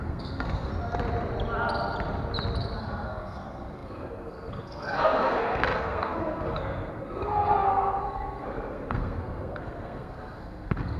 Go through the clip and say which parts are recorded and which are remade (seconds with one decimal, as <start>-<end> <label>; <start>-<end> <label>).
0.0-0.7 remade; 0.7-2.8 recorded; 2.8-11.0 remade